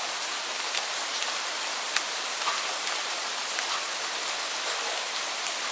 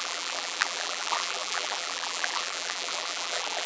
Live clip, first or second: first